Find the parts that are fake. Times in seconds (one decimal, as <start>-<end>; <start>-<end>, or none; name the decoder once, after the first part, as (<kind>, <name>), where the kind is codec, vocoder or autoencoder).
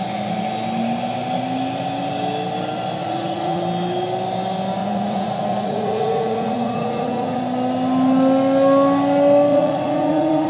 3.0-3.6 (vocoder, Vocos); 4.8-7.4; 9.5-10.5